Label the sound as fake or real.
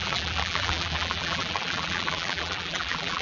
fake